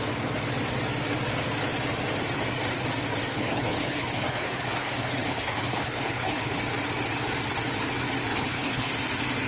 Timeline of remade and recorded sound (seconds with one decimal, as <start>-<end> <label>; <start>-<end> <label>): 0.0-3.3 recorded; 3.3-6.6 remade; 6.6-8.3 recorded; 8.3-8.9 remade; 8.9-9.5 recorded